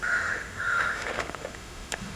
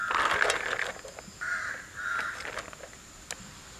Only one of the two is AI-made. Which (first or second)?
first